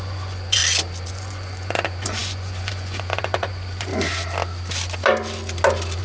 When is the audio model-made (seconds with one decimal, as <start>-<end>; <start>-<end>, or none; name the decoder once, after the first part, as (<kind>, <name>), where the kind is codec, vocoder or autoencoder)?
0.0-0.6 (vocoder, Vocos); 1.1-3.9